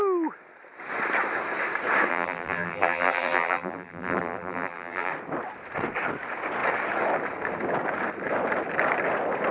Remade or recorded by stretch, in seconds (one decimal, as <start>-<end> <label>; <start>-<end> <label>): 0.0-2.1 recorded; 2.1-5.1 remade; 5.1-9.5 recorded